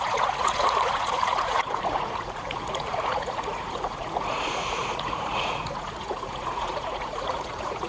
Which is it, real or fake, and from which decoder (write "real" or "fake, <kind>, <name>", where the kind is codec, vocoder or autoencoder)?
fake, vocoder, Vocos